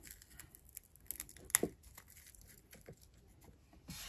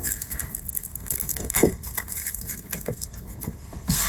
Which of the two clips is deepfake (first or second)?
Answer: second